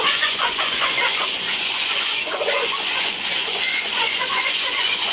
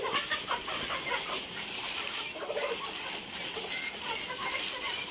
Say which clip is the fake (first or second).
first